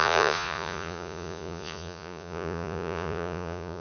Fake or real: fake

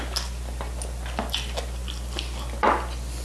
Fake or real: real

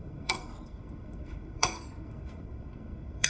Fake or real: fake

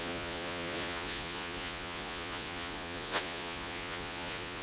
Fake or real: fake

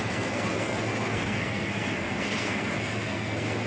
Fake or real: fake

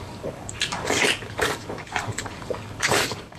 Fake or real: fake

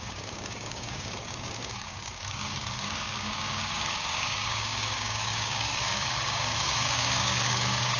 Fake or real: fake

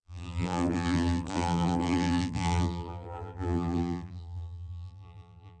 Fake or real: fake